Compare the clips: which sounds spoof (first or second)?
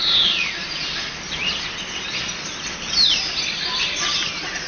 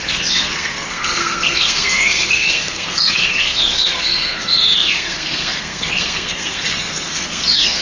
second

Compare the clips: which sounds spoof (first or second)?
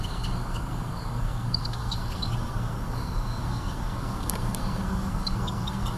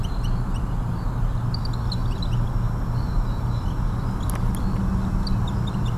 first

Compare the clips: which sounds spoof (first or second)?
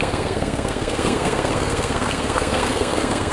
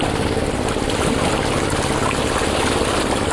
first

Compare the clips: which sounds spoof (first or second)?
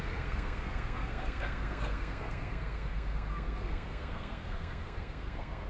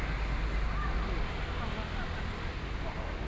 first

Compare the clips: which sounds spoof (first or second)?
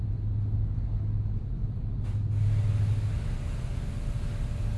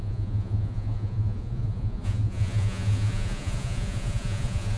second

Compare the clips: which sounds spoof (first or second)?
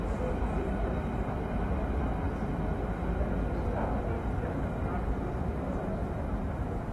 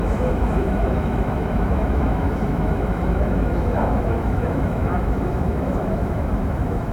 second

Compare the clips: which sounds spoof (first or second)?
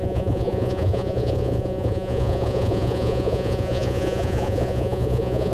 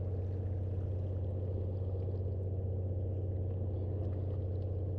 first